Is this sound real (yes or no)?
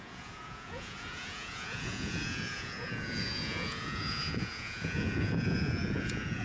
no